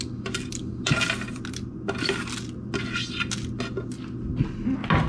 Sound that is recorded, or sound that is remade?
recorded